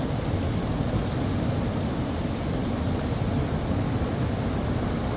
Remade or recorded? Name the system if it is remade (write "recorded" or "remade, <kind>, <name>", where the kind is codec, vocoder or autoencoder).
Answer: recorded